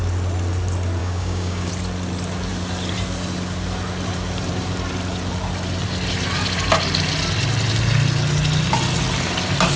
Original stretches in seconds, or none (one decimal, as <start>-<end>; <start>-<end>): 0.0-1.0; 1.7-9.8

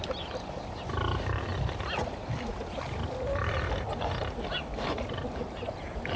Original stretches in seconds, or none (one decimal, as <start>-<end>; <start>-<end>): 0.0-6.2

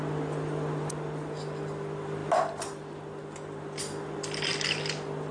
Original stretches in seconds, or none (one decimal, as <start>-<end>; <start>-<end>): 0.0-5.3